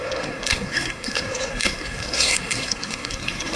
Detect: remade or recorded remade